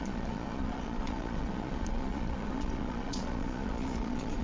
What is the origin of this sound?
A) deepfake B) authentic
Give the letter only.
A